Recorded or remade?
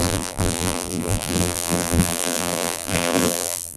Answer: remade